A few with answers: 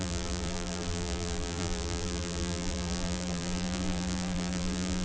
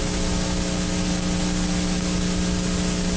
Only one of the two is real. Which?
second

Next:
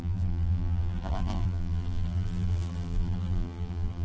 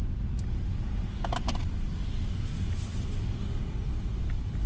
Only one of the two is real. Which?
second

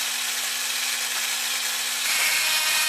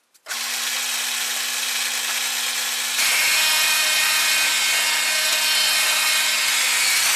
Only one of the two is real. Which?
second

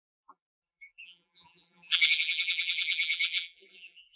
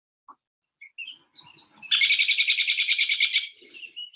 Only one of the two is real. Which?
second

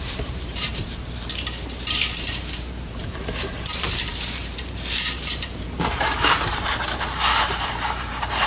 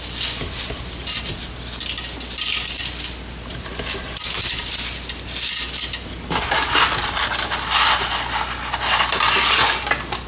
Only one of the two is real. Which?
second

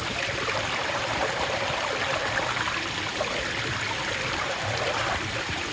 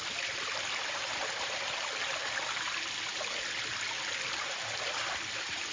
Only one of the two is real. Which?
second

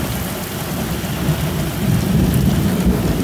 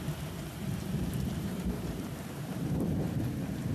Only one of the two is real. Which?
first